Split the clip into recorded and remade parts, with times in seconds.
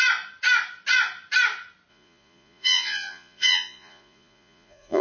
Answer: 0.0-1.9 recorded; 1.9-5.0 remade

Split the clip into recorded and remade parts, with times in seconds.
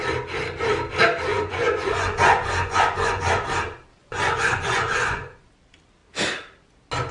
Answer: 0.0-1.3 recorded; 1.3-3.2 remade; 3.2-4.0 recorded; 4.0-5.5 remade; 5.5-7.1 recorded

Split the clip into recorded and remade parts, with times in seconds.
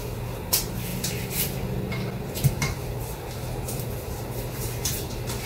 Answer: 0.0-5.5 recorded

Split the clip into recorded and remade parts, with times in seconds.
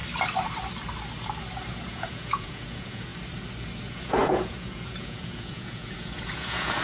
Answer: 0.0-1.7 recorded; 1.7-3.1 remade; 3.1-3.8 recorded; 3.8-6.8 remade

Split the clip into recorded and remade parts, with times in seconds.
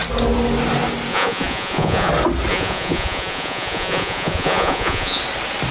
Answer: 0.0-1.1 recorded; 1.1-2.1 remade; 2.1-2.5 recorded; 2.5-5.2 remade; 5.2-5.7 recorded